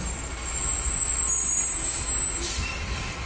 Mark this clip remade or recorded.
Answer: recorded